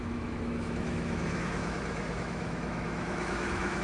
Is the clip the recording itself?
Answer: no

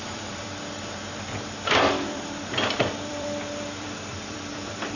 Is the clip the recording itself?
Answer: no